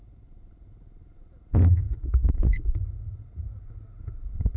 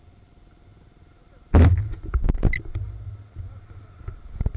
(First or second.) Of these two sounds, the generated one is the first